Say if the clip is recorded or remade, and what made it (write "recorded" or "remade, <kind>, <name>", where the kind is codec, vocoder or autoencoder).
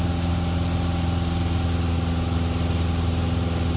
recorded